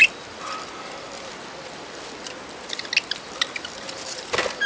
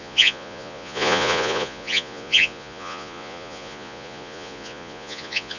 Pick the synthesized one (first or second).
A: second